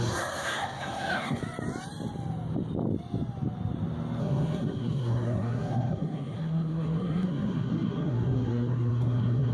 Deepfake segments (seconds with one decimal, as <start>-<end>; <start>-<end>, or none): 0.0-1.4; 4.2-9.5